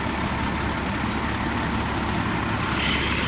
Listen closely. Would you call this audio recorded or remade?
recorded